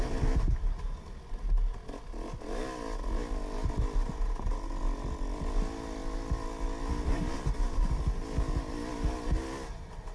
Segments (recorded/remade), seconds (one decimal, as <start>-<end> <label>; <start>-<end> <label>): 0.0-10.1 recorded